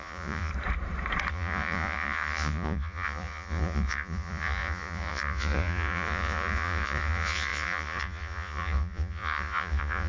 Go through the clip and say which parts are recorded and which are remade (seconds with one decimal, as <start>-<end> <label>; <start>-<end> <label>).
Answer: 0.0-0.5 remade; 0.5-1.3 recorded; 1.3-10.1 remade